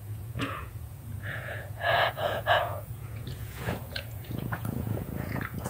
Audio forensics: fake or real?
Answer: fake